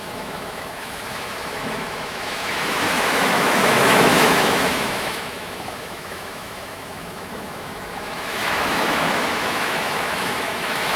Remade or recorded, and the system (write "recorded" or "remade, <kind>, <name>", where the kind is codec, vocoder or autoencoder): remade, autoencoder, DAC-VAE